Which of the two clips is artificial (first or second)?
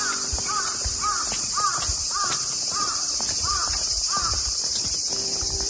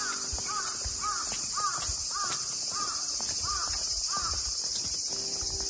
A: first